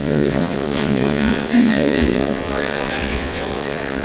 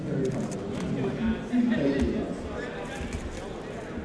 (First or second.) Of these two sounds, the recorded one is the second